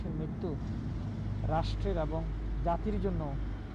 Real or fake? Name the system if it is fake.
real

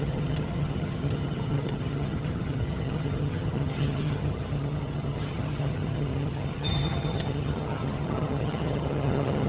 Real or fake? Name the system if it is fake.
fake, vocoder, HiFi-GAN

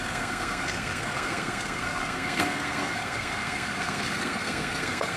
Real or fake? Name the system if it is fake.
fake, codec, SNAC